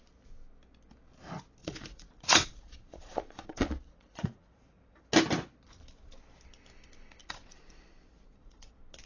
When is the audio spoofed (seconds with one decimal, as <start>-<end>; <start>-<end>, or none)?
1.6-5.0; 7.2-8.7